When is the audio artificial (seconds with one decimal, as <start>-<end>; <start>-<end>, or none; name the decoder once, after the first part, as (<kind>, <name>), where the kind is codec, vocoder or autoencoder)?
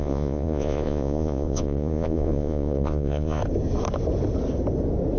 0.0-3.4 (vocoder, Vocos)